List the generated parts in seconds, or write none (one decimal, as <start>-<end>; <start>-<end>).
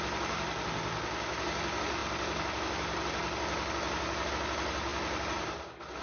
none